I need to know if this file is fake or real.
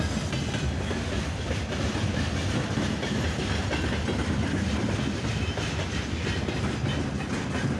real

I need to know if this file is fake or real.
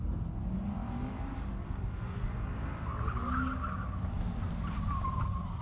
real